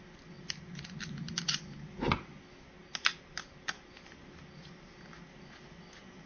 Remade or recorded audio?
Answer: recorded